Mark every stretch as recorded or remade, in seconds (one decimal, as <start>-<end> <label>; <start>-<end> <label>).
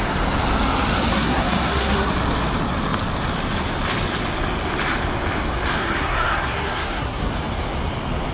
0.0-1.1 recorded; 1.1-2.1 remade; 2.1-5.8 recorded; 5.8-7.3 remade; 7.3-8.3 recorded